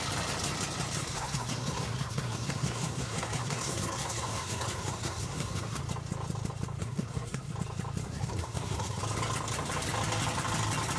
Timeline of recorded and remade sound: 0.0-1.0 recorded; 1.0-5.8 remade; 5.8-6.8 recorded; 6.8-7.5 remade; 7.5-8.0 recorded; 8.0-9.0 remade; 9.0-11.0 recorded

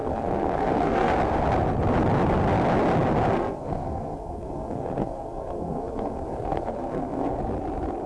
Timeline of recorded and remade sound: 0.0-1.1 remade; 1.1-3.3 recorded; 3.3-7.4 remade; 7.4-8.1 recorded

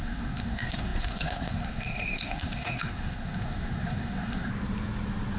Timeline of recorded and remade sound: 0.0-4.5 remade; 4.5-5.4 recorded